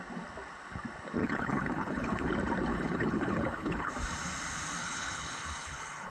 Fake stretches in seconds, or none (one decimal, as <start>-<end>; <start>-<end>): 1.2-2.3; 2.7-3.9; 4.8-6.1